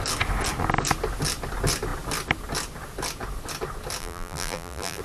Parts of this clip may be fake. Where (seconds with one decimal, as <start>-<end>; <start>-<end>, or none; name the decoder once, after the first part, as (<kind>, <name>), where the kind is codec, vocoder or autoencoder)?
4.0-5.0 (vocoder, BigVGAN v2)